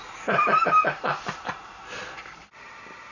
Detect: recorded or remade remade